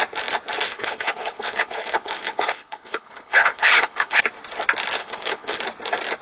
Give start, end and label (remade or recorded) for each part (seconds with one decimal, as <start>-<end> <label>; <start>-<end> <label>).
0.0-0.7 recorded; 0.7-4.2 remade; 4.2-5.0 recorded; 5.0-5.6 remade; 5.6-6.2 recorded